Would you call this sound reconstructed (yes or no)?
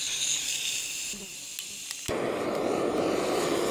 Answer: no